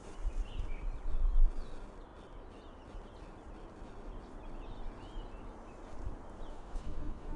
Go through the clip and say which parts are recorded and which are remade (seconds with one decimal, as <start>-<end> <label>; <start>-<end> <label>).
0.0-6.5 recorded; 6.5-7.4 remade